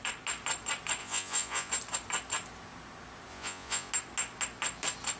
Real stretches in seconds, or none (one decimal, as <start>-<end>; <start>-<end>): 0.0-1.0; 1.7-3.3; 3.9-5.2

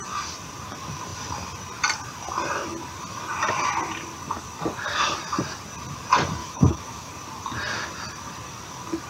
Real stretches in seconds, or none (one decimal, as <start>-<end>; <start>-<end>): 0.0-6.4; 7.1-9.1

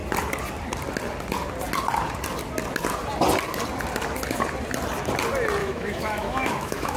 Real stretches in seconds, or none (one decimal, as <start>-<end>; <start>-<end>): 0.0-5.6

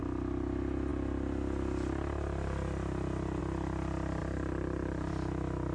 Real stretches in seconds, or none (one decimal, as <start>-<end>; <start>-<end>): 0.0-4.2; 5.1-5.7

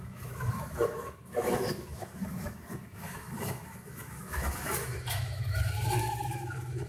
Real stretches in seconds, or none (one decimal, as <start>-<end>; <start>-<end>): none

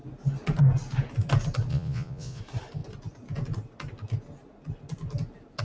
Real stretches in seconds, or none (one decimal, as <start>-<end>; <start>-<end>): 0.0-1.7; 2.4-5.6